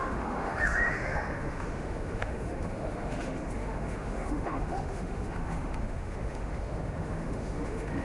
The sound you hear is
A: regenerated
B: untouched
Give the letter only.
A